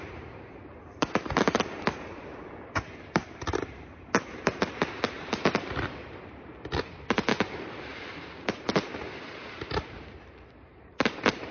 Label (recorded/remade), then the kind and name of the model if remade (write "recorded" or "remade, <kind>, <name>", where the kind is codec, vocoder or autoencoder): remade, vocoder, BigVGAN v2